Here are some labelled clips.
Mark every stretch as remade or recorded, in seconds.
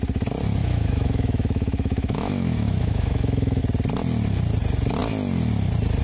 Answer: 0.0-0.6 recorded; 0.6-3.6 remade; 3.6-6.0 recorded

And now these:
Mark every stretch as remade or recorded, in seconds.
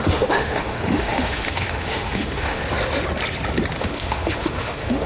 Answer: 0.0-2.6 remade; 2.6-3.7 recorded; 3.7-5.1 remade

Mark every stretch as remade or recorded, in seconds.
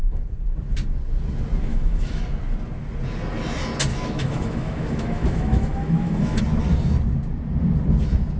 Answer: 0.0-1.7 recorded; 1.7-2.2 remade; 2.2-3.9 recorded; 3.9-6.4 remade; 6.4-8.4 recorded